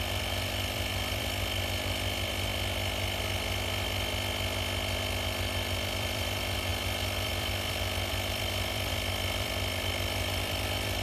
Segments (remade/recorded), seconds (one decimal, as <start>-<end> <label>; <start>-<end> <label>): 0.0-2.5 remade; 2.5-5.4 recorded; 5.4-11.0 remade